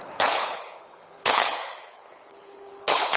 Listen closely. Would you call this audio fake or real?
fake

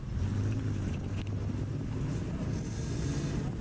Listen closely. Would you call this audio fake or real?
real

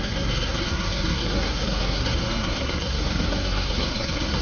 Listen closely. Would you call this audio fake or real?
fake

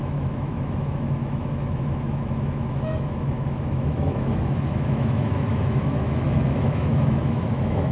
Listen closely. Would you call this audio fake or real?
fake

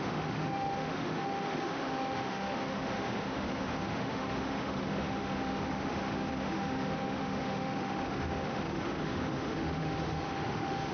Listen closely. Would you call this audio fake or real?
fake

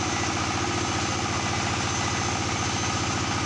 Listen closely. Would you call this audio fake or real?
real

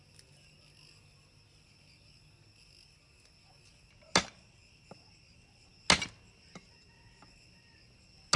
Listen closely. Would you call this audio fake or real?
real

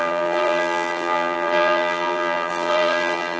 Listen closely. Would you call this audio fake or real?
fake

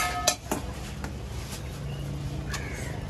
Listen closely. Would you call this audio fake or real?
real